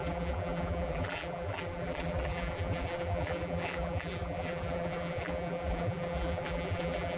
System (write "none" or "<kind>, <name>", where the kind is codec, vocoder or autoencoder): vocoder, BigVGAN v2